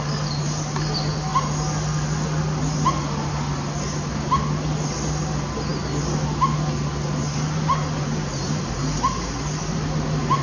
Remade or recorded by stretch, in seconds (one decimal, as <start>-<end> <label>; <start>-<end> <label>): 0.0-10.4 recorded